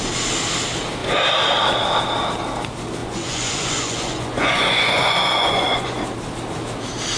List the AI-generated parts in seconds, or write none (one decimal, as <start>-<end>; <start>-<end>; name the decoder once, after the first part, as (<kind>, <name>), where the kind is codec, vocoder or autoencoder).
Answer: 3.0-6.0 (vocoder, Vocos)